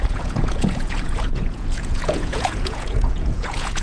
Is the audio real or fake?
fake